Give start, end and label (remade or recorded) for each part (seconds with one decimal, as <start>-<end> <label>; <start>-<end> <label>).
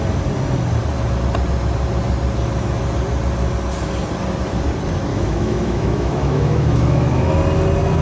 0.0-5.1 recorded; 5.1-7.3 remade; 7.3-8.0 recorded